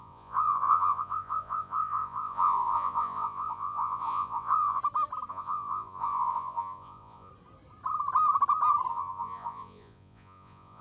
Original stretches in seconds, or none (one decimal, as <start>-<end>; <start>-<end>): 4.8-5.3; 7.3-8.9